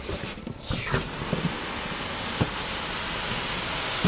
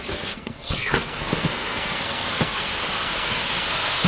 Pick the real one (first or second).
first